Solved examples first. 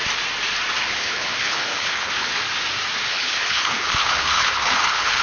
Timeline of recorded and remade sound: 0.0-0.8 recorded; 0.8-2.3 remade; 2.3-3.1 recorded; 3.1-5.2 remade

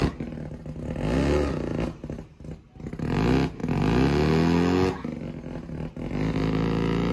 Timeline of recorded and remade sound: 0.0-7.1 recorded

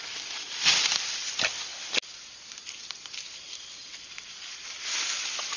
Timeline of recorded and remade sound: 0.0-5.6 recorded

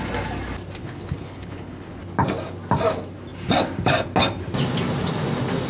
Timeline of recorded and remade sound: 0.0-0.8 recorded; 0.8-2.0 remade; 2.0-5.7 recorded